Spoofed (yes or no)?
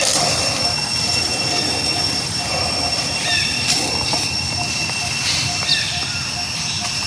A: no